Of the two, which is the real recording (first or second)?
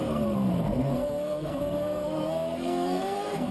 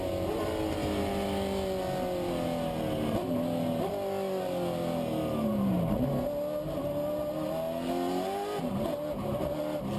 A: second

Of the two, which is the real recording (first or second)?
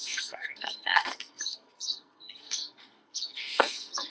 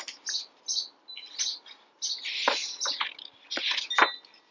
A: second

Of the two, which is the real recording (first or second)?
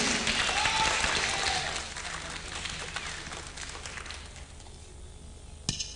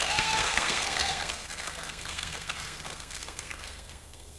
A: first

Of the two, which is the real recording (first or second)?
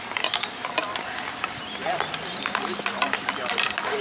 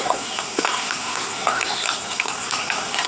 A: first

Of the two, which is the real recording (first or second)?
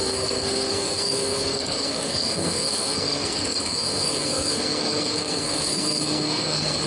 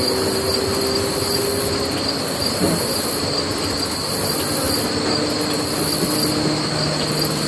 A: second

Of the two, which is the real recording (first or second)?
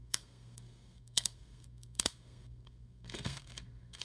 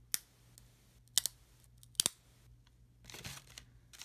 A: second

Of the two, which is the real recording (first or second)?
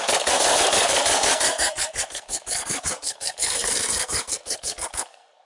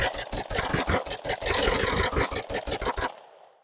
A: second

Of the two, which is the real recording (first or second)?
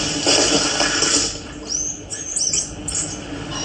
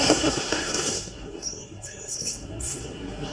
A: first